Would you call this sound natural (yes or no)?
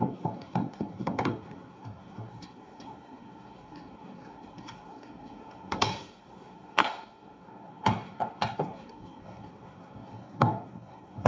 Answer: no